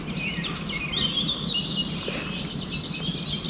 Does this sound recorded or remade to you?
recorded